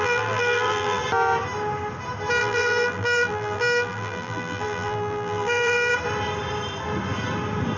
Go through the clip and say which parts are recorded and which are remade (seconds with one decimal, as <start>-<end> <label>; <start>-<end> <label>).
0.0-1.0 remade; 1.0-2.4 recorded; 2.4-5.9 remade; 5.9-7.8 recorded